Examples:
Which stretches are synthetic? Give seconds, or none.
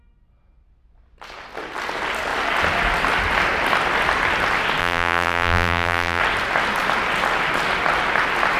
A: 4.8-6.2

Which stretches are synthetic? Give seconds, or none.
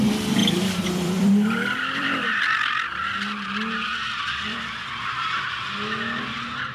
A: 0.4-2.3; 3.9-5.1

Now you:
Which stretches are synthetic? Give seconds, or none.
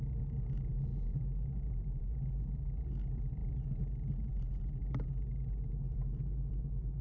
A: none